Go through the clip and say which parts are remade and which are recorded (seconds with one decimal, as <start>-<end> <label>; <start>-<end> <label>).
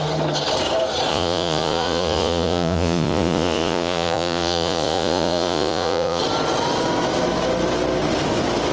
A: 0.0-1.1 recorded; 1.1-6.2 remade; 6.2-8.7 recorded